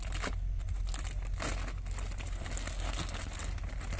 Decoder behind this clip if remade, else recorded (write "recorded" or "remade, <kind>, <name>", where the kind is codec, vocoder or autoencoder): recorded